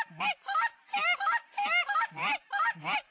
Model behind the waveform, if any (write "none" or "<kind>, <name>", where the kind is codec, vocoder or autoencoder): none